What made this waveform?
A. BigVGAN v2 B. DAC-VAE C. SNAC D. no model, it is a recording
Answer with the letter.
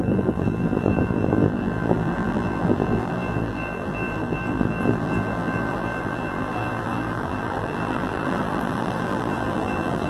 A